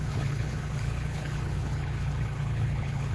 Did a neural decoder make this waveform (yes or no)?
yes